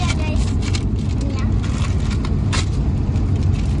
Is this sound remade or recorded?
recorded